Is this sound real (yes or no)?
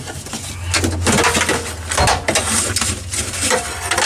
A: yes